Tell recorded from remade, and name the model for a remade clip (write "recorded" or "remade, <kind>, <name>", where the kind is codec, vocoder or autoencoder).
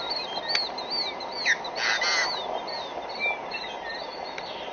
recorded